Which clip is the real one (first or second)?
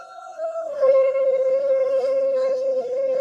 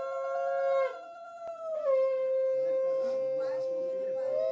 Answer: second